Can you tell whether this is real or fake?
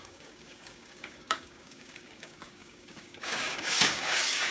fake